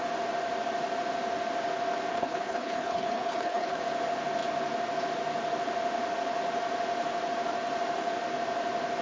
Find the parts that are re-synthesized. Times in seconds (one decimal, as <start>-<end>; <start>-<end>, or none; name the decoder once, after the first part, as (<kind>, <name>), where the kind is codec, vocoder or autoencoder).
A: 2.1-3.8 (codec, HILCodec)

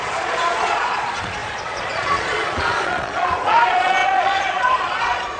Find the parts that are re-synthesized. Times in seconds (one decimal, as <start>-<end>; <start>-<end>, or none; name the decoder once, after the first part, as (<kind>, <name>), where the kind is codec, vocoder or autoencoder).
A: 0.0-5.4 (vocoder, Vocos)

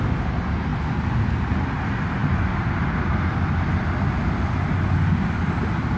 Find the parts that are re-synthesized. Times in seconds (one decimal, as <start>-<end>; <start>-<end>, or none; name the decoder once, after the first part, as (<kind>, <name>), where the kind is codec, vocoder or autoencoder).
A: none

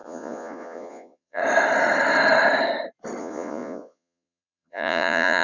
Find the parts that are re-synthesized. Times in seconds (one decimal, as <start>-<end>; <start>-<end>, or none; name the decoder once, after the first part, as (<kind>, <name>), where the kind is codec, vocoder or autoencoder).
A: 0.0-1.4 (vocoder, Vocos); 3.2-5.4

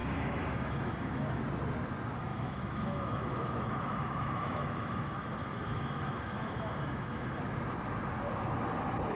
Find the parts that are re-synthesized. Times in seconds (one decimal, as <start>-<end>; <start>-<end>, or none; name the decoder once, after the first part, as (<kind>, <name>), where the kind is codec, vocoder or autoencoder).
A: 0.0-1.4 (autoencoder, DAC-VAE); 2.3-7.4

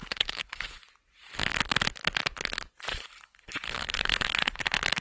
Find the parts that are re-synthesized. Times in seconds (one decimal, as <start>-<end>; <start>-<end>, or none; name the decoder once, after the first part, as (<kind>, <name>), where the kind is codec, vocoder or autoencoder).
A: 0.0-0.8 (codec, HILCodec); 2.9-4.6